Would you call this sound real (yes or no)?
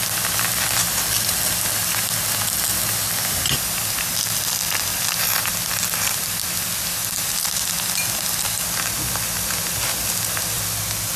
yes